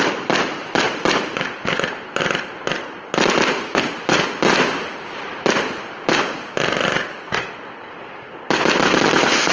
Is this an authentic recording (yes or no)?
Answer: yes